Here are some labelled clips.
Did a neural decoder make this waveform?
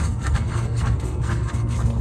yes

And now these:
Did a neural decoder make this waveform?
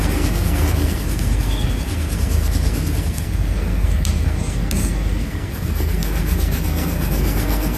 yes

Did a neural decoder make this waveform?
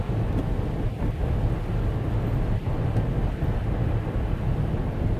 no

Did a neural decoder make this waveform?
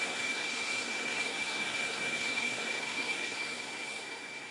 yes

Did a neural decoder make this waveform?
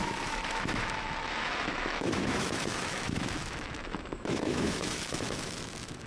yes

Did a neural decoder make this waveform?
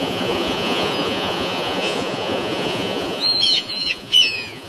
yes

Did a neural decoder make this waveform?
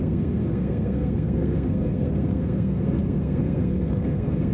yes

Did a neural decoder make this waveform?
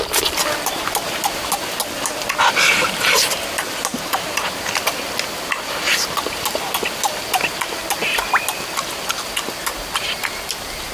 no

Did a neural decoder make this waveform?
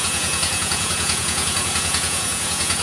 yes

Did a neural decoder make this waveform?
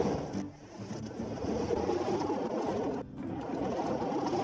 no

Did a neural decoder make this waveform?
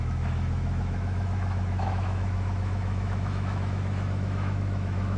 yes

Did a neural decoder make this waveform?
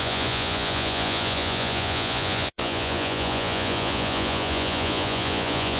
yes